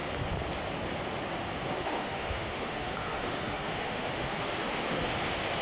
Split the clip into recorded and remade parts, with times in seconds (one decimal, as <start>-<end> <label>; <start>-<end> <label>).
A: 0.0-1.7 recorded; 1.7-5.1 remade; 5.1-5.6 recorded